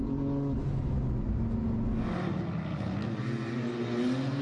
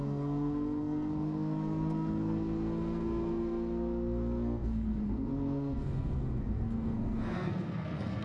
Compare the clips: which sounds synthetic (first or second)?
second